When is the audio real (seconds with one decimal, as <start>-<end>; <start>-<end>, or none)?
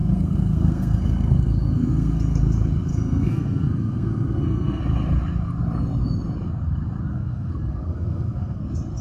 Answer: 2.4-2.9; 4.8-7.1; 8.6-9.0